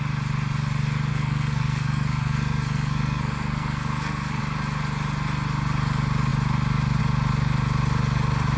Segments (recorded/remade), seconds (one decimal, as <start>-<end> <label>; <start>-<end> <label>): 0.0-1.1 recorded; 1.1-4.4 remade; 4.4-8.6 recorded